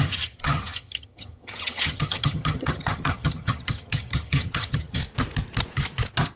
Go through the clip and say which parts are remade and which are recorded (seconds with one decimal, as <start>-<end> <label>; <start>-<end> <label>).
0.0-5.0 remade; 5.0-6.4 recorded